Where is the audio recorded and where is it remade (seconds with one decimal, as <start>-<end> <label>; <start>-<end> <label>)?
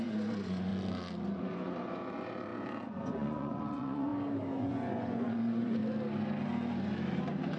0.0-0.7 remade; 0.7-1.4 recorded; 1.4-4.1 remade; 4.1-4.6 recorded; 4.6-5.8 remade; 5.8-7.6 recorded